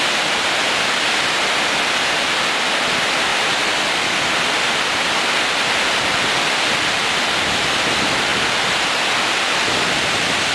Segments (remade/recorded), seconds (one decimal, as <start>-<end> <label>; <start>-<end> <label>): 0.0-8.3 recorded; 8.3-8.8 remade; 8.8-10.5 recorded